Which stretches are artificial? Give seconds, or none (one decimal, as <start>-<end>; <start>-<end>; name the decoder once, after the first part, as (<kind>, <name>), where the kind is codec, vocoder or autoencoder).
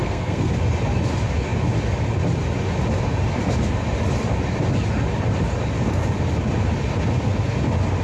0.0-0.5 (codec, SNAC)